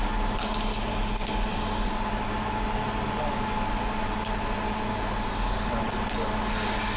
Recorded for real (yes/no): yes